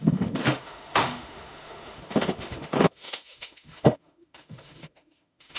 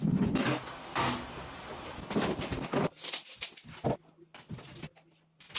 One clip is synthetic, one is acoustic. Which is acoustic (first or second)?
second